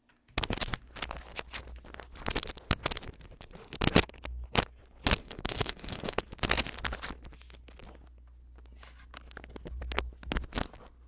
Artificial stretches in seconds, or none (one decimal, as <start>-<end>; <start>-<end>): 5.2-6.2